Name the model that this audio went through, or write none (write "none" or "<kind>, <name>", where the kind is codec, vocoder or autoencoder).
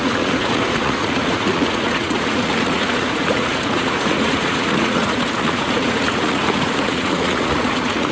vocoder, Vocos